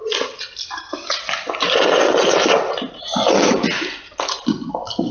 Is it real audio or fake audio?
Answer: real